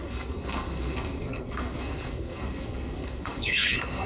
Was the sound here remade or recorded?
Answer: remade